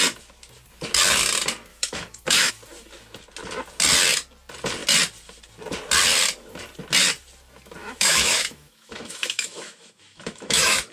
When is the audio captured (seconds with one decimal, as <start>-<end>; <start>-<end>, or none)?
0.0-1.7; 2.5-7.8